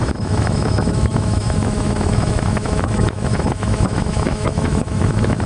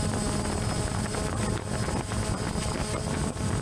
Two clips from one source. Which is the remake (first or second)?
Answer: first